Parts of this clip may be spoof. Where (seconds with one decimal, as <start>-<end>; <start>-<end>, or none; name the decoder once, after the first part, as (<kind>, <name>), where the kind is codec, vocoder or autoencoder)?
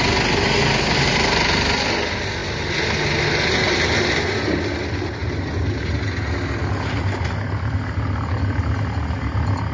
none